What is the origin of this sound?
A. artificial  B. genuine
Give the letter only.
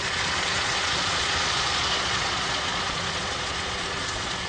A